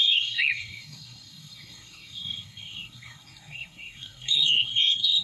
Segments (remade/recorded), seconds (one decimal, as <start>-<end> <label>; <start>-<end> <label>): 0.0-5.2 remade